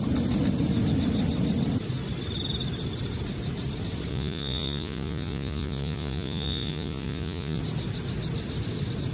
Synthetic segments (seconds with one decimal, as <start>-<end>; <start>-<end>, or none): 4.1-7.6